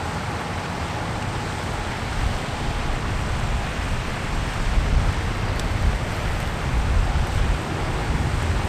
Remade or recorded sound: recorded